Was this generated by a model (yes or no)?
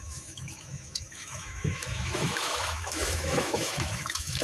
yes